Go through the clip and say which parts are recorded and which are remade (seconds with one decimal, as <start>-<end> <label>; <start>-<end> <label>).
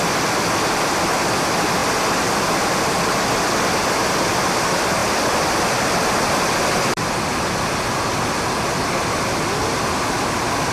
0.0-10.7 recorded